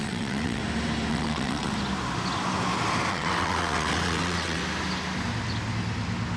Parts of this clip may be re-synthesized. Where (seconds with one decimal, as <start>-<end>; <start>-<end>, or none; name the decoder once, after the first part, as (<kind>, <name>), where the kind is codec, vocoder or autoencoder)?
0.0-0.6 (vocoder, WaveNeXt); 1.1-1.7; 3.1-4.6